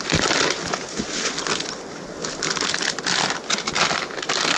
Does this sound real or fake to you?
real